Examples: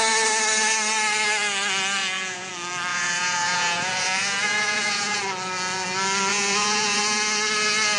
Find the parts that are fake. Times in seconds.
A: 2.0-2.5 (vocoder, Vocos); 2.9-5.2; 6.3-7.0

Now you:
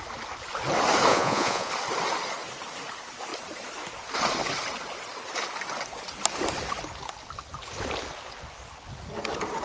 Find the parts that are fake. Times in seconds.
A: 1.1-1.7 (vocoder, Vocos)